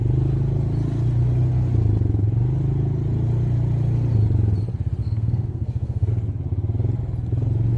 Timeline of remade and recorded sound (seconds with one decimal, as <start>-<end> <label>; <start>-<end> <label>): 0.0-5.0 recorded; 5.0-6.1 remade; 6.1-7.8 recorded

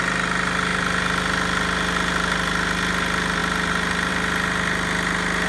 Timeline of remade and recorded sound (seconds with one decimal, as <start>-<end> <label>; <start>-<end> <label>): 0.0-5.5 recorded

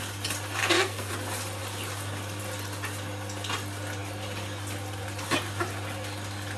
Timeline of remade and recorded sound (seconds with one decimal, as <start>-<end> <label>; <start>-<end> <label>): 0.0-0.6 recorded; 0.6-1.1 remade; 1.1-6.6 recorded